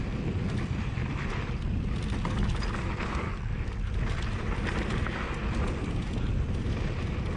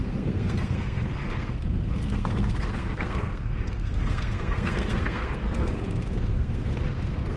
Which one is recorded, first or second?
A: first